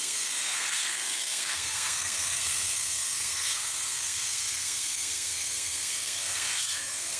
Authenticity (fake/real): fake